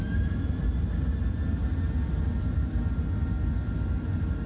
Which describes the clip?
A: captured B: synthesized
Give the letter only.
A